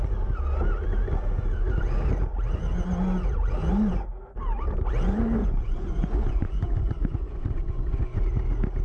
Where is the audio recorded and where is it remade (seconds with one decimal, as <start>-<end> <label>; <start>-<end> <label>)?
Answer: 0.0-5.4 recorded; 5.4-8.2 remade; 8.2-8.8 recorded